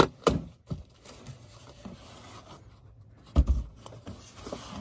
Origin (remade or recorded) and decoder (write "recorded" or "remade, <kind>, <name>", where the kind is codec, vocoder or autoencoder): recorded